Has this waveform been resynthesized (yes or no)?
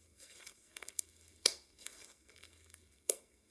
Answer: yes